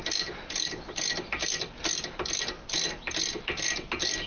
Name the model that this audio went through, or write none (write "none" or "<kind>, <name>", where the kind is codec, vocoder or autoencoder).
none